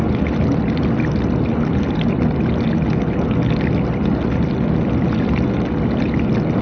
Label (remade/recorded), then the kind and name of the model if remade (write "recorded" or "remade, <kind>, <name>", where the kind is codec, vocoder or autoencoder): recorded